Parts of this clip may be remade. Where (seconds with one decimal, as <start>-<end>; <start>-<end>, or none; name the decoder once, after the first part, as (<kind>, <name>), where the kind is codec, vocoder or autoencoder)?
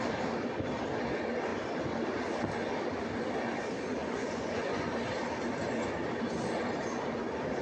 4.0-4.9 (vocoder, Vocos)